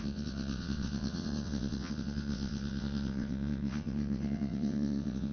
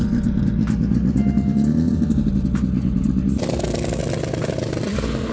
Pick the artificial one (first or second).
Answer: first